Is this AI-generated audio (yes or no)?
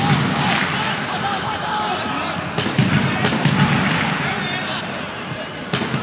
no